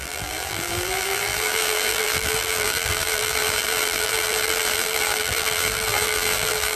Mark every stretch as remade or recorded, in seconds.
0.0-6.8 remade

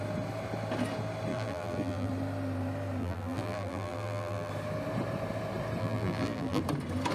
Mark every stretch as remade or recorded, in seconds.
0.0-1.3 recorded; 1.3-2.1 remade; 2.1-3.0 recorded; 3.0-4.5 remade; 4.5-5.8 recorded; 5.8-6.6 remade; 6.6-7.1 recorded

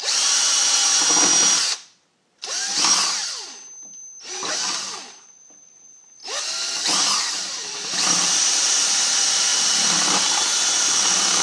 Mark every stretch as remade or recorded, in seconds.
0.0-0.8 remade; 0.8-5.2 recorded; 5.2-6.2 remade; 6.2-7.3 recorded; 7.3-11.4 remade

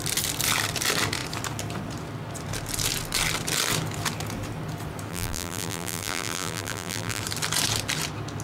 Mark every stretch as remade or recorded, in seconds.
0.0-5.1 recorded; 5.1-7.2 remade; 7.2-8.4 recorded

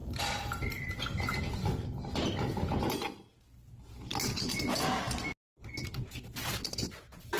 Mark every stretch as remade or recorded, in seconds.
0.0-0.7 remade; 0.7-7.4 recorded

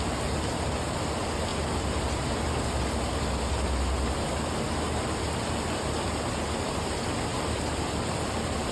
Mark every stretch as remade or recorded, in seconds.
0.0-7.3 recorded; 7.3-8.7 remade

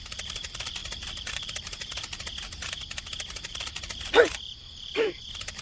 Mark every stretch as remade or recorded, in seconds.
0.0-2.3 remade; 2.3-3.3 recorded; 3.3-5.6 remade

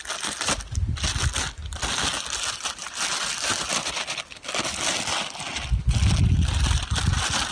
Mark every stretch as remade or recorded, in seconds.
0.0-7.5 recorded